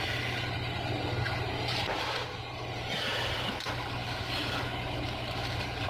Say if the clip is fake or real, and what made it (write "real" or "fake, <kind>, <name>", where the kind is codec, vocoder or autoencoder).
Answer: real